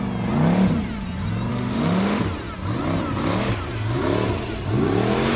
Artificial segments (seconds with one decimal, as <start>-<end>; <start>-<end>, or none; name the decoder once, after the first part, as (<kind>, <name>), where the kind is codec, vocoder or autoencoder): 1.5-2.2 (autoencoder, DAC-VAE)